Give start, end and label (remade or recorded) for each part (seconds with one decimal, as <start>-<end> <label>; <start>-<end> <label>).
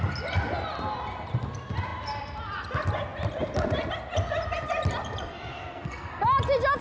0.0-5.5 recorded; 5.5-6.2 remade; 6.2-6.8 recorded